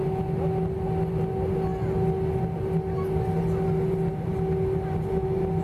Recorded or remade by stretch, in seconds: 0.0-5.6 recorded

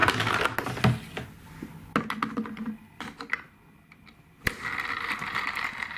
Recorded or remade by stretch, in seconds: 0.0-2.3 recorded; 2.3-6.0 remade

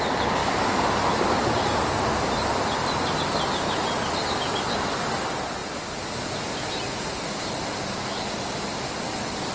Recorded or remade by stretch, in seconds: 0.0-5.6 recorded; 5.6-6.3 remade; 6.3-9.5 recorded

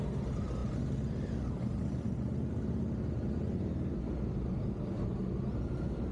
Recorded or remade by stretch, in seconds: 0.0-6.1 recorded

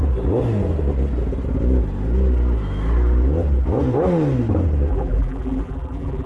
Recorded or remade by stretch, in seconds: 0.0-4.9 recorded; 4.9-6.3 remade

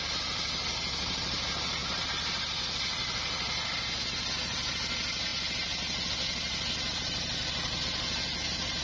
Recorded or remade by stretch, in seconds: 0.0-8.8 recorded

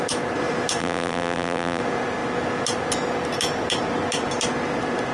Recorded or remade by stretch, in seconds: 0.0-0.8 recorded; 0.8-1.8 remade; 1.8-5.1 recorded